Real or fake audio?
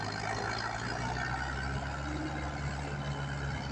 real